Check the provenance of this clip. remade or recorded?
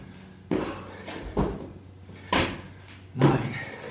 recorded